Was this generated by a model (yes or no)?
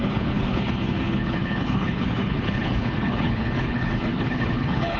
yes